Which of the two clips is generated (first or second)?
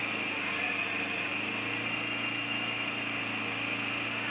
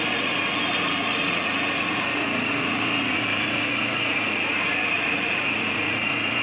second